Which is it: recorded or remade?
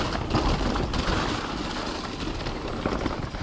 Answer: recorded